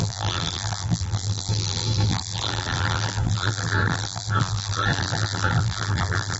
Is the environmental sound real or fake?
fake